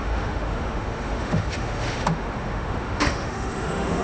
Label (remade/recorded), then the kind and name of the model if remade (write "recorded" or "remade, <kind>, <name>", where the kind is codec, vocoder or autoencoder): remade, autoencoder, DAC-VAE